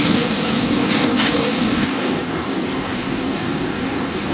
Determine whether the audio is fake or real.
fake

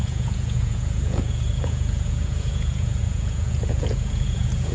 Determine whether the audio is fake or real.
fake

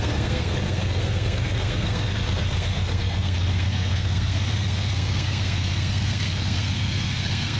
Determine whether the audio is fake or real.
fake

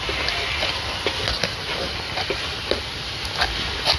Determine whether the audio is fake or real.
real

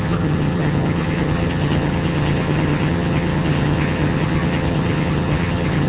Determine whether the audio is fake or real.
fake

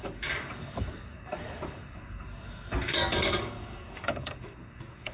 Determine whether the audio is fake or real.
fake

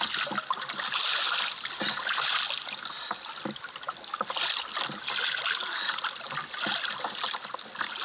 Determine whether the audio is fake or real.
real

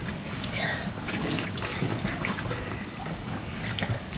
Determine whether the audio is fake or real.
fake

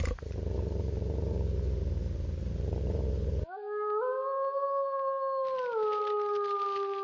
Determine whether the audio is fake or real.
real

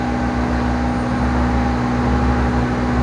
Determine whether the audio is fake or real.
real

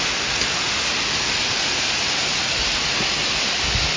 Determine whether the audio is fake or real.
real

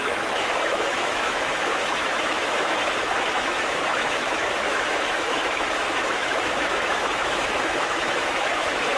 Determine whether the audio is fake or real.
fake